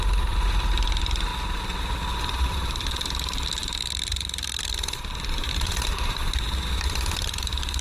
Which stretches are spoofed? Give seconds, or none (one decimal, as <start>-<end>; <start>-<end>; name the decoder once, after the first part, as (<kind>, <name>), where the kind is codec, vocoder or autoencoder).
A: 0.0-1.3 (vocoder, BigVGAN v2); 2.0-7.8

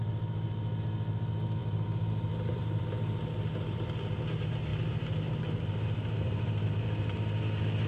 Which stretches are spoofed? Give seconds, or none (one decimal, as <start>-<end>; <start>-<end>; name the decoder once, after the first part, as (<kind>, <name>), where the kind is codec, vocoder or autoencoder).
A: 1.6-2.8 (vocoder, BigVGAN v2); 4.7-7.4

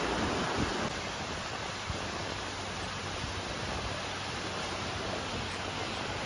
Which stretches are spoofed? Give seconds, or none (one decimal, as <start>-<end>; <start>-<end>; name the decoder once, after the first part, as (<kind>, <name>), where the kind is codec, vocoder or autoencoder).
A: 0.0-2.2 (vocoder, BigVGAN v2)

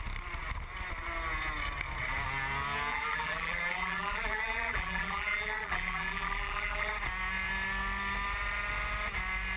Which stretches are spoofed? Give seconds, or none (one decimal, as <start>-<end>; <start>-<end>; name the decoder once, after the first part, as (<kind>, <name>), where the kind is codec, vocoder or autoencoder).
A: 2.9-6.9 (vocoder, BigVGAN v2)

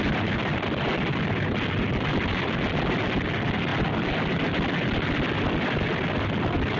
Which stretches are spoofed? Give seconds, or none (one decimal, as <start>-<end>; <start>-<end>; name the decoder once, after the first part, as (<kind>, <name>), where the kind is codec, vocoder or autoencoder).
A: 0.5-1.2 (vocoder, BigVGAN v2)

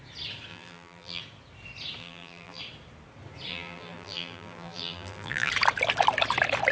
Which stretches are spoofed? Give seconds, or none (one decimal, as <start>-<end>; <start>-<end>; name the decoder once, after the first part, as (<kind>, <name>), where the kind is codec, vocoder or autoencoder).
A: 0.5-1.2 (vocoder, BigVGAN v2); 2.0-2.6; 3.5-5.5

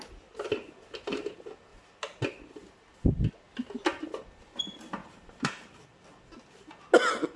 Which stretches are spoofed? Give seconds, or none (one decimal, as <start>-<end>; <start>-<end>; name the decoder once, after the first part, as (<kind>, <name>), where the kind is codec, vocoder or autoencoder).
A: 5.0-5.8 (vocoder, BigVGAN v2)

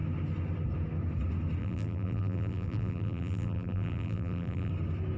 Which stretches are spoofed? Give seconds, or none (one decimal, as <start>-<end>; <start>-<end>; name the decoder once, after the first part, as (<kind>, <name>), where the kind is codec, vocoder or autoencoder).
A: 1.6-4.7 (vocoder, BigVGAN v2)